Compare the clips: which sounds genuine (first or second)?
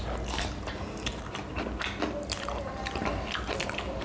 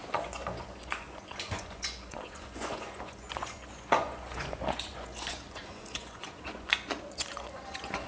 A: first